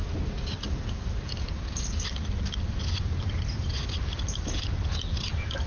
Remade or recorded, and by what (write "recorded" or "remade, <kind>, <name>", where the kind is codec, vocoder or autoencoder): recorded